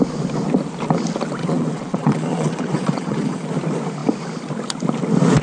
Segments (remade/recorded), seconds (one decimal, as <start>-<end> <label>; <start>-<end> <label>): 0.0-1.4 recorded; 1.4-3.6 remade; 3.6-5.4 recorded